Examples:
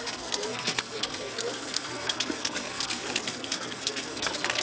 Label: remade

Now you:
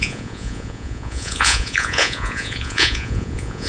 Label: remade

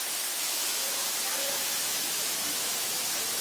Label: remade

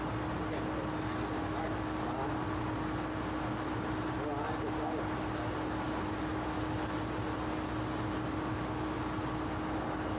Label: recorded